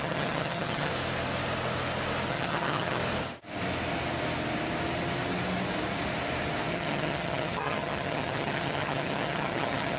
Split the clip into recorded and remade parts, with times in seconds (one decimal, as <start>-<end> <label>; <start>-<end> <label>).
0.0-0.9 remade; 0.9-2.3 recorded; 2.3-3.0 remade; 3.0-6.7 recorded; 6.7-10.0 remade